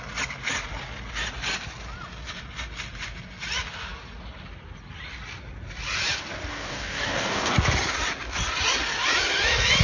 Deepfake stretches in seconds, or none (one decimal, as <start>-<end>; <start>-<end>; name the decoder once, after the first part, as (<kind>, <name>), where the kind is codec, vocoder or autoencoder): 6.5-7.5 (codec, DAC)